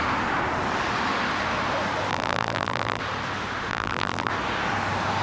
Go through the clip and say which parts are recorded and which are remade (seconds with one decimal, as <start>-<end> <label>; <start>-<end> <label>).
0.0-2.1 recorded; 2.1-3.0 remade; 3.0-3.7 recorded; 3.7-4.3 remade; 4.3-5.2 recorded